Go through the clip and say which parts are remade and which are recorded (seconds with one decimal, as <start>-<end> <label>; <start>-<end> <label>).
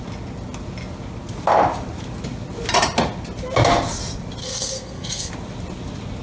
0.0-4.4 recorded; 4.4-5.3 remade; 5.3-6.2 recorded